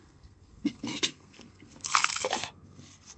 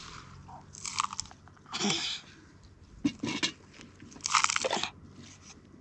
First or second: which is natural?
second